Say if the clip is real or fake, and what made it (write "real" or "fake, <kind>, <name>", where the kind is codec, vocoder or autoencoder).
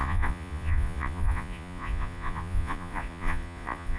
fake, vocoder, Vocos